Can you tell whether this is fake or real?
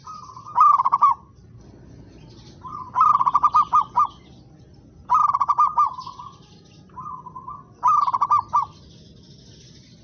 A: real